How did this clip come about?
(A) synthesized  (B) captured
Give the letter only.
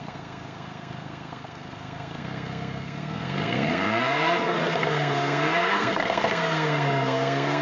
A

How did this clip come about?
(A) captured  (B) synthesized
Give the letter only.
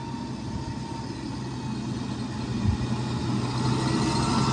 A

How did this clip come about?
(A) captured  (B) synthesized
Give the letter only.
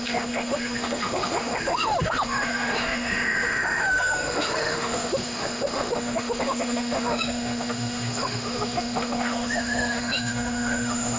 B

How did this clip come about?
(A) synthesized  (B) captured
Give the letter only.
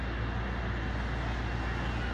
B